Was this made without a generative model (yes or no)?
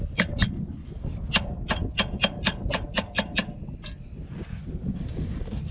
yes